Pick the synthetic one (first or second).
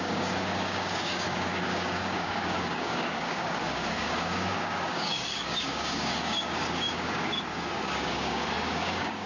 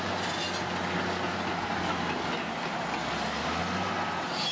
first